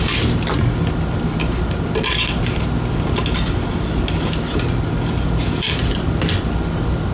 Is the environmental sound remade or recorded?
recorded